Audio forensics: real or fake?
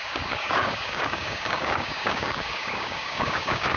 fake